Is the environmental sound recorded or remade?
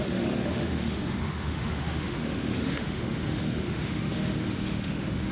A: remade